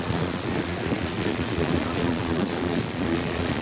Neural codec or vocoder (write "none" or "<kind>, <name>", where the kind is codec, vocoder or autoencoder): vocoder, Vocos